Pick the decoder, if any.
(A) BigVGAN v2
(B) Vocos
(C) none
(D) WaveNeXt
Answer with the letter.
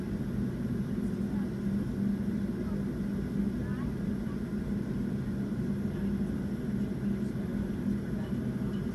C